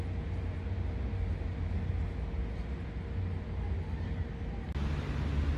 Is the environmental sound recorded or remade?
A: recorded